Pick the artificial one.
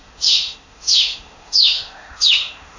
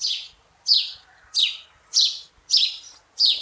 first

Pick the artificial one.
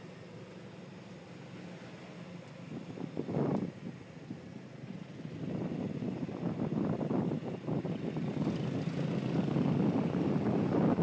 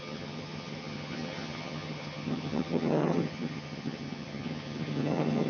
second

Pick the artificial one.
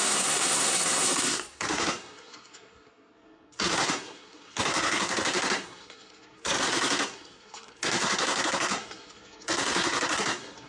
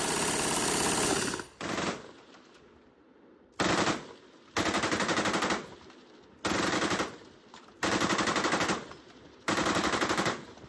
first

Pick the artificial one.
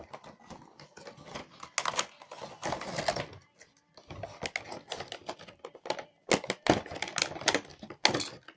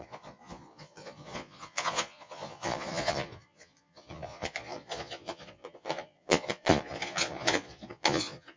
second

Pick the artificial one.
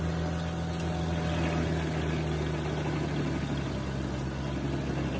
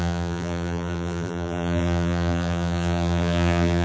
second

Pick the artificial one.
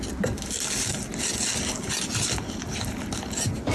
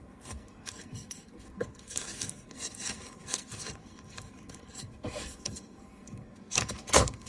second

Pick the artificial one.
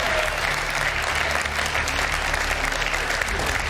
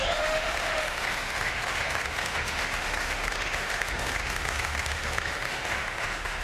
second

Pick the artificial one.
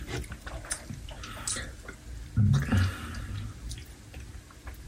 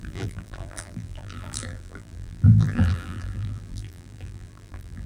second